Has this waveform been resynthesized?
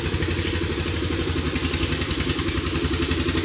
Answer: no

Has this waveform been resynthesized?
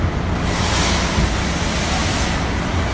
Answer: no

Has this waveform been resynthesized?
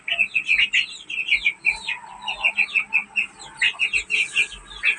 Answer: no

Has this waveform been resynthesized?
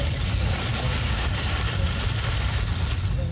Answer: no